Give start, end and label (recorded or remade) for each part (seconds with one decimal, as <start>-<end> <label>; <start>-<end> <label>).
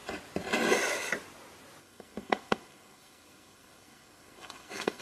0.0-1.8 recorded; 1.8-5.0 remade